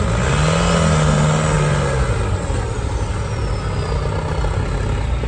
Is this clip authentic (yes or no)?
yes